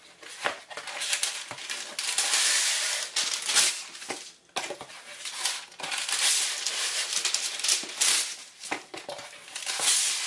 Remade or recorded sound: recorded